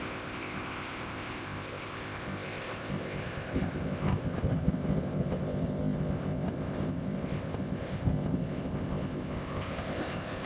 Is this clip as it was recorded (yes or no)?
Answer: no